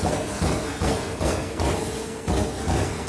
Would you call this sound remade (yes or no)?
yes